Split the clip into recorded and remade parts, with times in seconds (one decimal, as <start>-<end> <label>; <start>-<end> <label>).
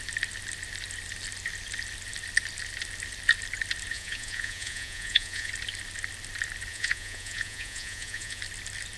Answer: 0.0-3.9 recorded; 3.9-5.5 remade; 5.5-6.7 recorded; 6.7-8.4 remade; 8.4-9.0 recorded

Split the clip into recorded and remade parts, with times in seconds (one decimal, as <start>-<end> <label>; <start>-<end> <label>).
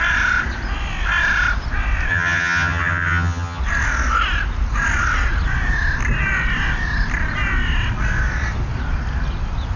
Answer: 0.0-2.1 recorded; 2.1-3.6 remade; 3.6-9.8 recorded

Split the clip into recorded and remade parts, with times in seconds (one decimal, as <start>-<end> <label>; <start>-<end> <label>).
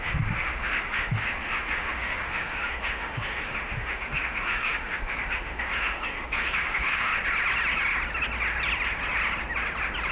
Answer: 0.0-7.1 remade; 7.1-10.1 recorded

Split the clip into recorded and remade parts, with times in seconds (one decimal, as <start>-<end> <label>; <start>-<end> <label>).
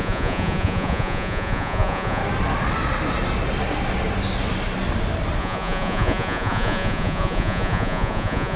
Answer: 0.0-2.2 remade; 2.2-5.4 recorded; 5.4-8.6 remade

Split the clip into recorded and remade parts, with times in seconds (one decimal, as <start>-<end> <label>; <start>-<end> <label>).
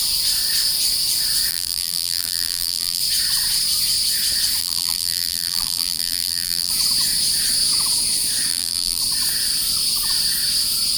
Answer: 0.0-1.5 recorded; 1.5-3.0 remade; 3.0-4.6 recorded; 4.6-6.7 remade; 6.7-8.5 recorded; 8.5-9.0 remade; 9.0-11.0 recorded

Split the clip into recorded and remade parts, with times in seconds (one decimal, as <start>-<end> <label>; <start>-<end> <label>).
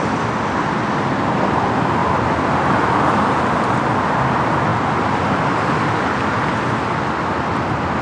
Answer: 0.0-8.0 recorded